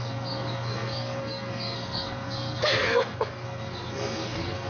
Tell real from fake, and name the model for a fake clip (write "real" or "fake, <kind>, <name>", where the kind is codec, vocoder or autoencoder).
fake, codec, SNAC